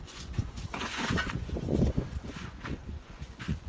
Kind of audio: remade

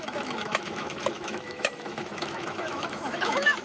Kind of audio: remade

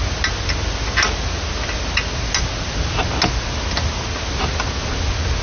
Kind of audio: recorded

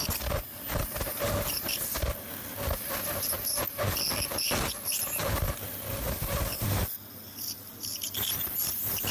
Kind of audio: recorded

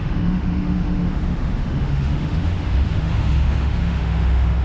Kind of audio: remade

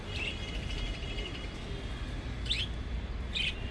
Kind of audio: recorded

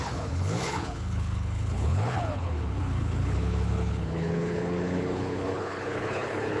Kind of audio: remade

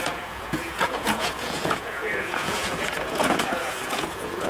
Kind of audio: remade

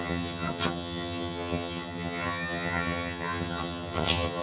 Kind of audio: remade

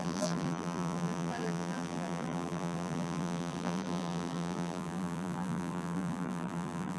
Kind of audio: remade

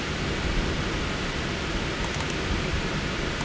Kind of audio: recorded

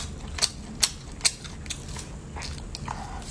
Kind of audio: recorded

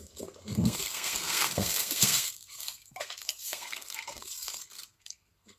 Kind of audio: remade